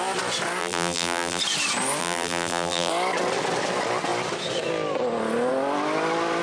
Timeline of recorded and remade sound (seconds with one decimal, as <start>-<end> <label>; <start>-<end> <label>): 0.0-0.6 recorded; 0.6-1.4 remade; 1.4-2.0 recorded; 2.0-2.9 remade; 2.9-6.4 recorded